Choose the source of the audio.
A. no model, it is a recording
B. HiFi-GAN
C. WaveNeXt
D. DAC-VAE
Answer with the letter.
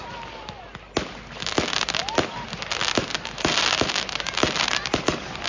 A